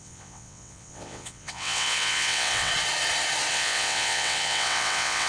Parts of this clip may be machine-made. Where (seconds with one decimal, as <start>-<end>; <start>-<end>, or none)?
0.0-2.7; 3.5-5.3